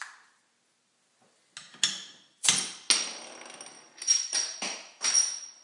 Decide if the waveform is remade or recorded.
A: recorded